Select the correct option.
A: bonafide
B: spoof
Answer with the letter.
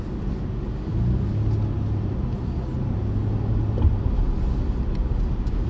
A